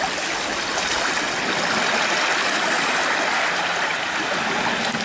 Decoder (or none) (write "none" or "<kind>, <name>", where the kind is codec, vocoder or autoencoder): none